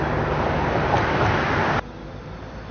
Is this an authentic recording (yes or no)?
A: yes